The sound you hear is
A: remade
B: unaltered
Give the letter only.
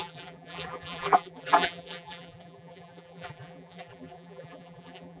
A